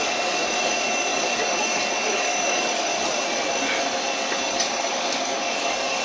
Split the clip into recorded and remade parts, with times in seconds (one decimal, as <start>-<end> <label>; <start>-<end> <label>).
0.0-2.9 remade; 2.9-4.5 recorded; 4.5-6.0 remade